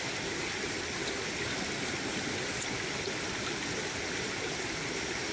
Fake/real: real